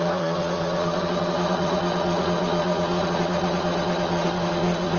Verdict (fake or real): fake